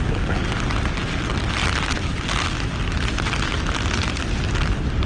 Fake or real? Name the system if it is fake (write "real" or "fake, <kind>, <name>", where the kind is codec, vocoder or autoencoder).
real